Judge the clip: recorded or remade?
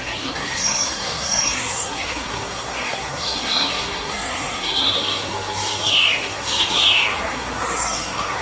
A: remade